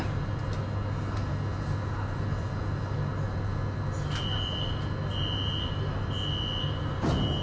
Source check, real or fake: real